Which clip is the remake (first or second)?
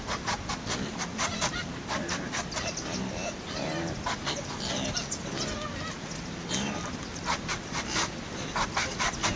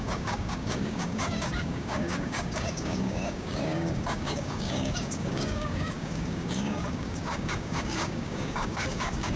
second